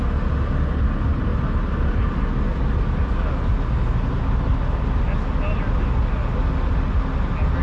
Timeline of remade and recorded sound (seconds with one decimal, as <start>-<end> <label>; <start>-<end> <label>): 0.0-7.6 recorded